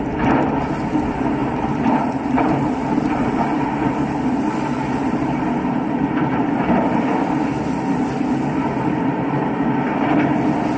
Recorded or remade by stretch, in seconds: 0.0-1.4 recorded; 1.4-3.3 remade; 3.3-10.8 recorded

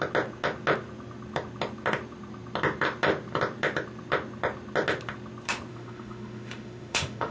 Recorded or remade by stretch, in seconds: 0.0-5.7 recorded; 5.7-7.3 remade

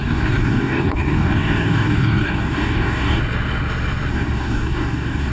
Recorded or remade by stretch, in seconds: 0.0-3.2 remade; 3.2-4.1 recorded; 4.1-5.3 remade